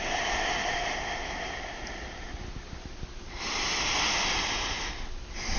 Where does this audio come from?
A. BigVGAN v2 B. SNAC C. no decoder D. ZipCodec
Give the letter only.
C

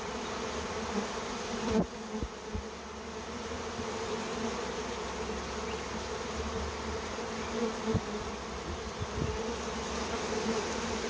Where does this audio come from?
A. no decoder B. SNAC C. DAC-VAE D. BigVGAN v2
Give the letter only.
A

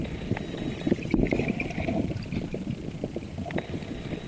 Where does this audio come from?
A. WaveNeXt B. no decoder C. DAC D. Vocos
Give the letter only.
B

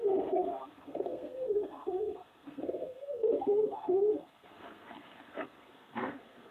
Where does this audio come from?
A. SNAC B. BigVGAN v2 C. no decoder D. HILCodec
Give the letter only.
A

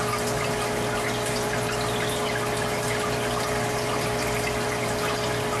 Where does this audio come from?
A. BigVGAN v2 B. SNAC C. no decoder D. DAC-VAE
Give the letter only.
C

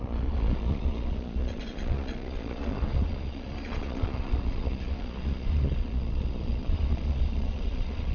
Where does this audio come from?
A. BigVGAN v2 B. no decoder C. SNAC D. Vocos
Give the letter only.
D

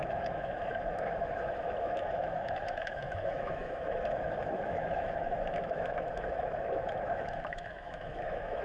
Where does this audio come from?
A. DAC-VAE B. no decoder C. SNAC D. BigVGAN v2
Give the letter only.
A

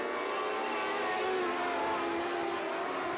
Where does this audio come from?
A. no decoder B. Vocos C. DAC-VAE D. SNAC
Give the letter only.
A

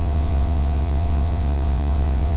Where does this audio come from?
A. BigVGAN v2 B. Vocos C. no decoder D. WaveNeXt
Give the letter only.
D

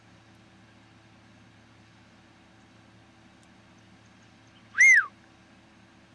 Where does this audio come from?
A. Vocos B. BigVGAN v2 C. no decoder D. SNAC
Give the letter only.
C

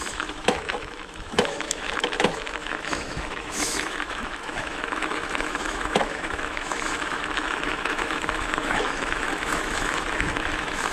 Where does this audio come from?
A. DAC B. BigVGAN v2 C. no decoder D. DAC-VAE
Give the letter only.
D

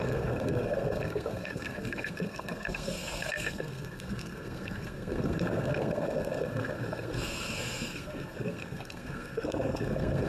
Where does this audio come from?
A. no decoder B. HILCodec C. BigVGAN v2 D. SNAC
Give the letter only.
D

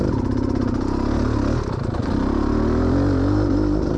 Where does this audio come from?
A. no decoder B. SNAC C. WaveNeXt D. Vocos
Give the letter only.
A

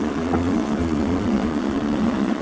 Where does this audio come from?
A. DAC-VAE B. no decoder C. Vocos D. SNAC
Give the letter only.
C